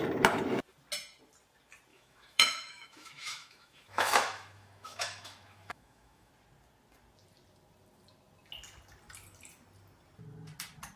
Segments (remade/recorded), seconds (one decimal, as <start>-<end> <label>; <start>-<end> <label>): 0.0-1.9 recorded; 1.9-6.3 remade; 6.3-11.0 recorded